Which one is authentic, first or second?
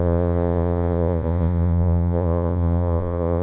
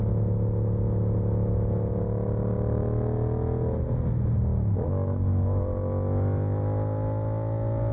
second